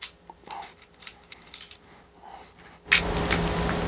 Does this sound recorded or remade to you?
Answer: recorded